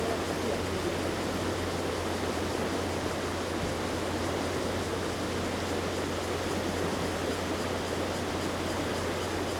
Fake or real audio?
real